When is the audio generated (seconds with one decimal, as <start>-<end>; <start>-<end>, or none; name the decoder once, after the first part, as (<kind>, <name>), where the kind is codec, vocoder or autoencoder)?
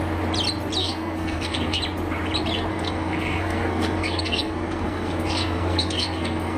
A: 0.8-1.8 (codec, SNAC); 2.7-6.6